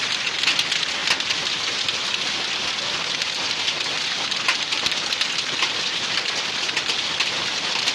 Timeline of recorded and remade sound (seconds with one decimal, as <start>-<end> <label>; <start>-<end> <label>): 0.0-7.9 recorded